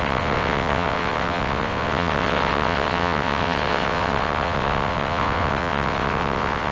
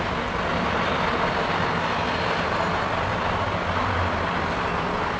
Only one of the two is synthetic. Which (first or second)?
first